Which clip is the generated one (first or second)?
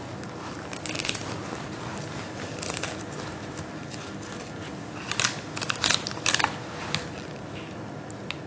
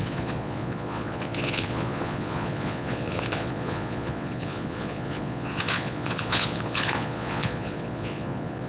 second